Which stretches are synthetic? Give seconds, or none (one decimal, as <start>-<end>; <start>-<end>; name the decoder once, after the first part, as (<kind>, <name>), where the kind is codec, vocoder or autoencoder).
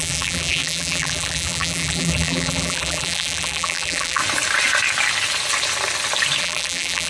0.0-4.2 (vocoder, BigVGAN v2); 6.4-7.1